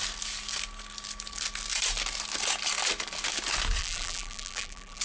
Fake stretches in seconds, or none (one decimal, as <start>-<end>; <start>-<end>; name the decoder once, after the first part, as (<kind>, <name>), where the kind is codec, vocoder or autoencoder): 3.8-5.0 (vocoder, BigVGAN v2)

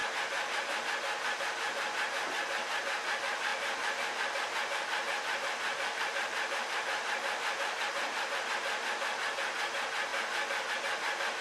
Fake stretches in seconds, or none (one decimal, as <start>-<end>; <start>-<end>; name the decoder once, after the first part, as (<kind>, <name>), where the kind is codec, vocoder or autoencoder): 0.0-0.8 (vocoder, BigVGAN v2); 3.5-8.4

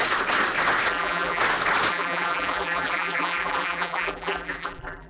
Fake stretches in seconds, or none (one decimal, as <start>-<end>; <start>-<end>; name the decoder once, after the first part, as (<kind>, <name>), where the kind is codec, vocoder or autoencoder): 0.9-1.4 (vocoder, BigVGAN v2); 1.9-5.1

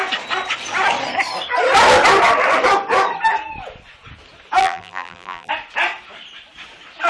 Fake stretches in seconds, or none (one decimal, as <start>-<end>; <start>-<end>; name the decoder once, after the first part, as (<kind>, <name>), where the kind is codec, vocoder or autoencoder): 4.6-5.5 (vocoder, BigVGAN v2)

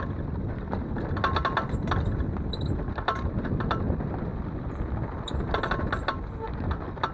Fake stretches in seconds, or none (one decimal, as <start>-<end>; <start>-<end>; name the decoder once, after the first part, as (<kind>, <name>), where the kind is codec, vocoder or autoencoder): none

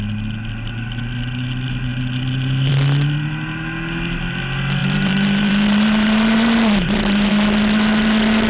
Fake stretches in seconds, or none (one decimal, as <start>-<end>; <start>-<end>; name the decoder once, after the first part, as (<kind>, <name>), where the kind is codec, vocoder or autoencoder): 4.8-7.3 (vocoder, BigVGAN v2)

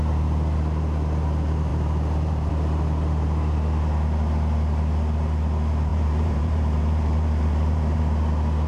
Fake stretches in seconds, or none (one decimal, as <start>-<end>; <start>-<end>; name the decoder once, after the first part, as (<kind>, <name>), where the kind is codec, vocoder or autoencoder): 1.7-2.5 (vocoder, BigVGAN v2); 5.9-8.0

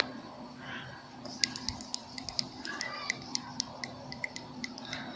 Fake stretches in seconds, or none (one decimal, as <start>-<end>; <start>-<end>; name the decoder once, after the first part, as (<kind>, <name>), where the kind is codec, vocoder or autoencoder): 2.0-4.8 (vocoder, BigVGAN v2)